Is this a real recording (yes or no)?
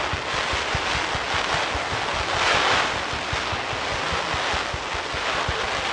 yes